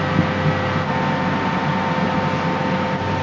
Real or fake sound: real